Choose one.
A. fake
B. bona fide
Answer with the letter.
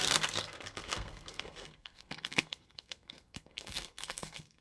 A